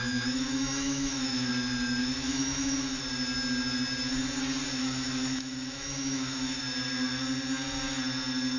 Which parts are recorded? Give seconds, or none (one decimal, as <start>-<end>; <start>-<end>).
1.5-2.0; 3.0-4.8; 6.6-8.6